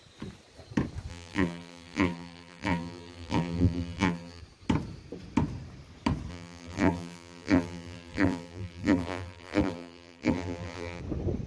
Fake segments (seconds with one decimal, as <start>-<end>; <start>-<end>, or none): 1.1-4.4; 6.3-11.0